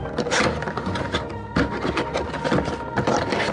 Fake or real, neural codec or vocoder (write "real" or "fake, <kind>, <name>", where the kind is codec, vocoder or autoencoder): real